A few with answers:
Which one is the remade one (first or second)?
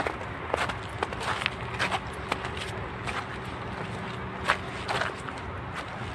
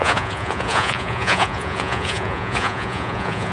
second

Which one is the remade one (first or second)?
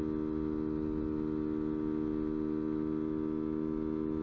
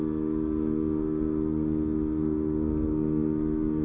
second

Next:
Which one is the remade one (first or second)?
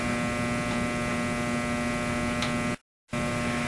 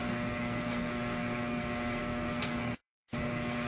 second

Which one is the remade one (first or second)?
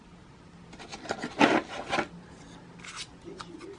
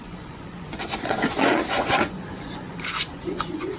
second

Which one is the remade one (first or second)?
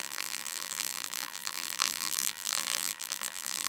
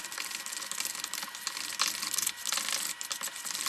first